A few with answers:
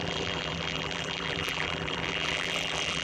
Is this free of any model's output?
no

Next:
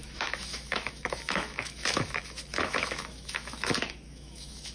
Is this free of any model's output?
no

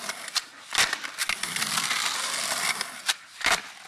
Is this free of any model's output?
yes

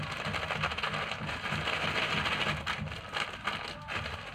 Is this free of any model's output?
yes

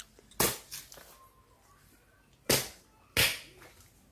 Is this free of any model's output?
yes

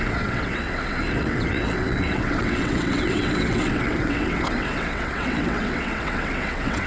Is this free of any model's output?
no